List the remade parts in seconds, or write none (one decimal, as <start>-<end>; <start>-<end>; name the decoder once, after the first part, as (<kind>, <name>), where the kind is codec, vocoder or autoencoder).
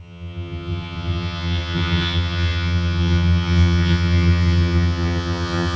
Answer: 0.0-5.8 (vocoder, HiFi-GAN)